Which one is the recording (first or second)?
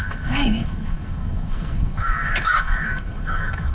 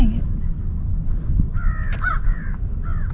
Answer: second